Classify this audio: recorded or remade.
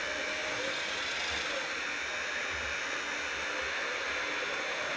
recorded